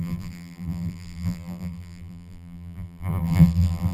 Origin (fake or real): fake